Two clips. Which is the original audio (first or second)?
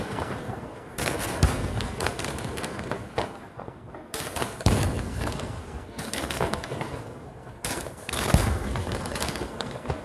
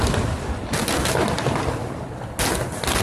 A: second